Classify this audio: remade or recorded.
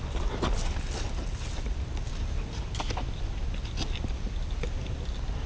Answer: recorded